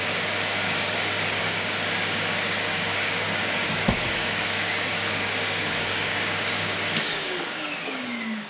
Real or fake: fake